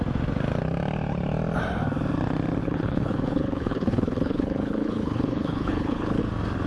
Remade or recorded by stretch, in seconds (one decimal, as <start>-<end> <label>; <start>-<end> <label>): 0.0-2.6 recorded; 2.6-6.2 remade; 6.2-6.7 recorded